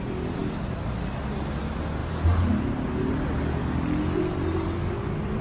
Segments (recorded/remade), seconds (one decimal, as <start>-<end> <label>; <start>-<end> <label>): 0.0-5.4 recorded